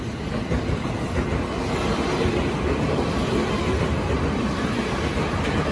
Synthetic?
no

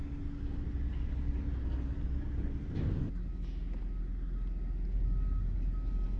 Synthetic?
no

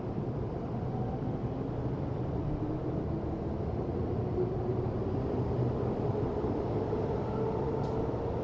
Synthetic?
no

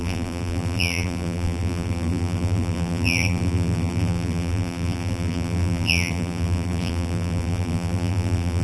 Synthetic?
yes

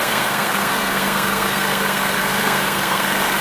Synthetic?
yes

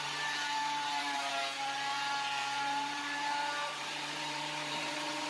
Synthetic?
yes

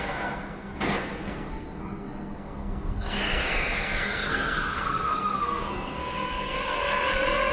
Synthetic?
yes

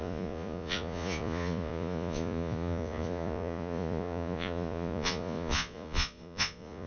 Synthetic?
yes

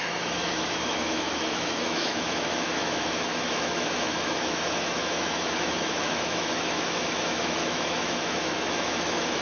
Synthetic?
yes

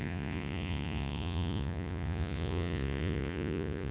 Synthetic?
yes